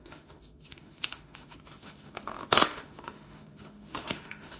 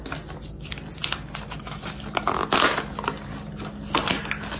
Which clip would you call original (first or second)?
second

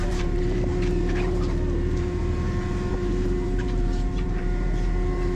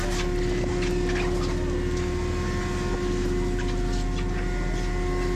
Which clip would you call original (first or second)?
second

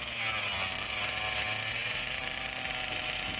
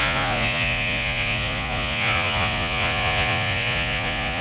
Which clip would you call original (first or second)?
first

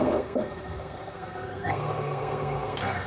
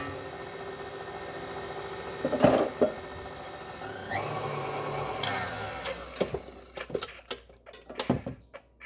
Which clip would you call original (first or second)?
second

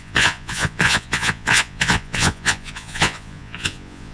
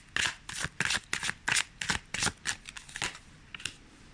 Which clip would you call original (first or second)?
second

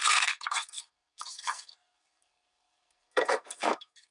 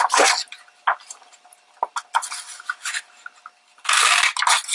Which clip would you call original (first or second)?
second